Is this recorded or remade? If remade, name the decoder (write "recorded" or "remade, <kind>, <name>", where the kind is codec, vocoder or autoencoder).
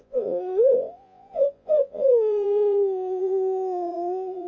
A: remade, vocoder, Vocos